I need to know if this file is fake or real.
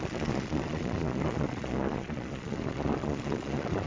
fake